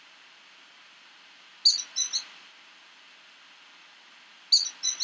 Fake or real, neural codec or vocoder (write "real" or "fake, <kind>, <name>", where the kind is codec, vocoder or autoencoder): real